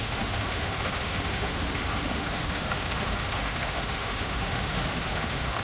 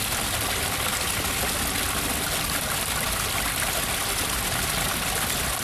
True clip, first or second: second